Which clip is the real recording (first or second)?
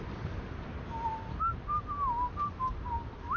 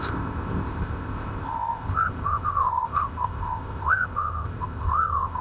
first